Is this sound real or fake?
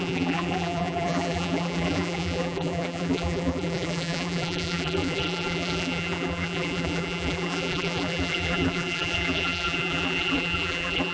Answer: fake